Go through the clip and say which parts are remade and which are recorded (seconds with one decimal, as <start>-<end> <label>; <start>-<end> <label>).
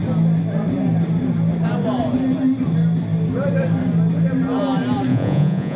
0.0-5.1 recorded; 5.1-5.8 remade